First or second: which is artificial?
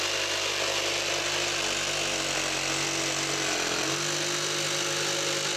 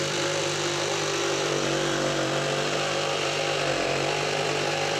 second